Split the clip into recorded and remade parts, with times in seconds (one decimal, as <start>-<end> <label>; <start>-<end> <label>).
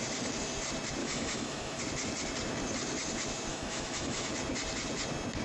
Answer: 0.0-1.0 recorded; 1.0-1.8 remade; 1.8-3.5 recorded; 3.5-4.3 remade; 4.3-5.4 recorded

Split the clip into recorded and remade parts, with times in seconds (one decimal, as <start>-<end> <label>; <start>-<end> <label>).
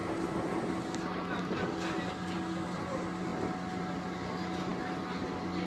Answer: 0.0-5.7 recorded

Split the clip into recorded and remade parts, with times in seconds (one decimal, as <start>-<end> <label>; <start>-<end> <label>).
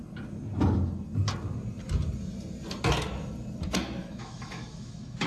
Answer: 0.0-4.0 recorded; 4.0-5.3 remade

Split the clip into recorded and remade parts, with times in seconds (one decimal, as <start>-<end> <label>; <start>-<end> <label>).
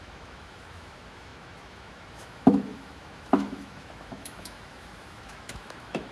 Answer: 0.0-6.1 remade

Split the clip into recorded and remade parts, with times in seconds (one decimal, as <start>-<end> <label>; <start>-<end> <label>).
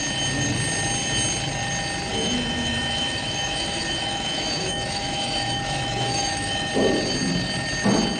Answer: 0.0-2.1 recorded; 2.1-6.7 remade; 6.7-8.2 recorded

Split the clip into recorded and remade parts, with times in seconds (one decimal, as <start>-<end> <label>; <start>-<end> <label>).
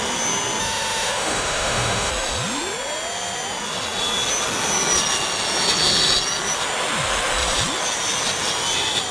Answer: 0.0-0.6 recorded; 0.6-2.1 remade; 2.1-9.1 recorded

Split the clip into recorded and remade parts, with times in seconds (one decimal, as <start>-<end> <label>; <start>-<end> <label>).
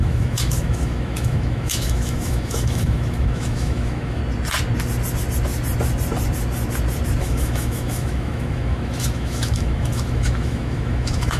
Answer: 0.0-4.2 remade; 4.2-7.2 recorded; 7.2-11.4 remade